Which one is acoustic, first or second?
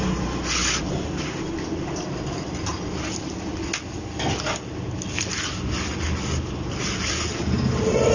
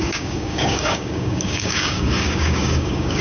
first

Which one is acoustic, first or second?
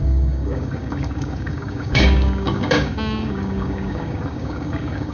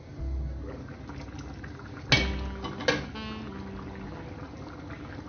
second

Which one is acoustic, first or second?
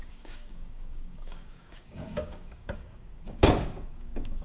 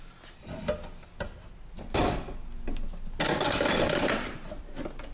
second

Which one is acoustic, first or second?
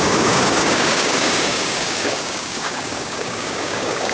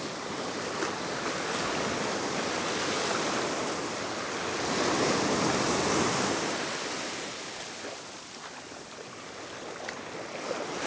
second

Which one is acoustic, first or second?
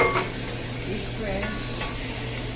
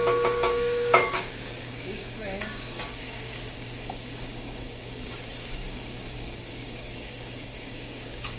first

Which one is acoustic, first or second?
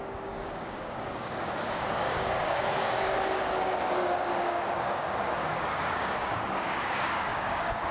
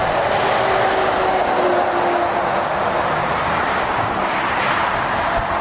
second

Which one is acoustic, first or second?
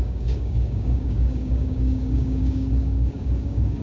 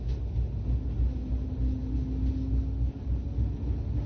second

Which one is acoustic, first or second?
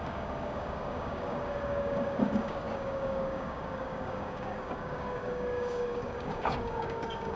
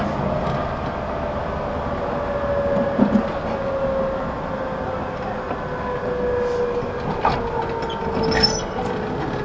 second